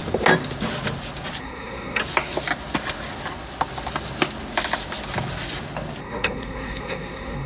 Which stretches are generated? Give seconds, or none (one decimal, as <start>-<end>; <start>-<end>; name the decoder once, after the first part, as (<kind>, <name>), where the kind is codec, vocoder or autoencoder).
1.4-2.0 (codec, SNAC); 6.0-7.5